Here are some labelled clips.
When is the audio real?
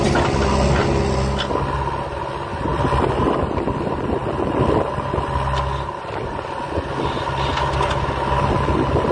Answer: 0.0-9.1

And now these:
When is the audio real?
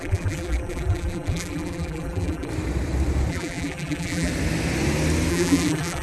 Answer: 2.5-3.3; 4.3-5.3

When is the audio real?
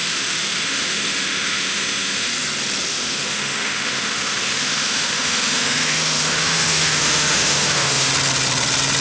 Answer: 2.3-2.9; 8.1-9.0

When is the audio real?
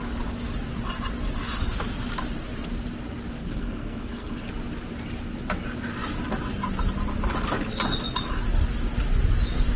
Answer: 0.0-3.4; 4.5-9.8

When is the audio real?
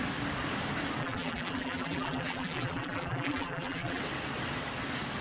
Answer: 0.0-1.0; 4.0-5.2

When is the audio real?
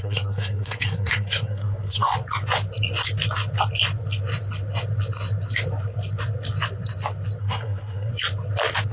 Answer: 2.1-7.4; 8.1-8.9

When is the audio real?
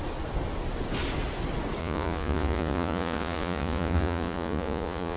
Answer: 0.0-1.8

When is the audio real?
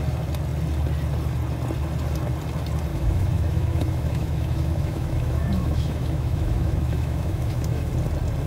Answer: 0.0-2.9; 7.9-8.5